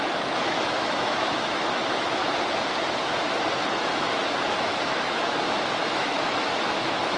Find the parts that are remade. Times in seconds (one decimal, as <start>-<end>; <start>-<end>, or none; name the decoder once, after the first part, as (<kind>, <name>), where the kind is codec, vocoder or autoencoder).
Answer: 0.0-2.2 (autoencoder, DAC-VAE); 4.6-7.2